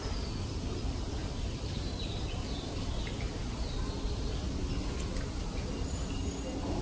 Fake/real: real